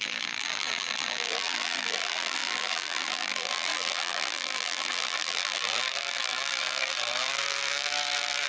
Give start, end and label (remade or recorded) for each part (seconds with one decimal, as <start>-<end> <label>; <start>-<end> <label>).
0.0-8.5 remade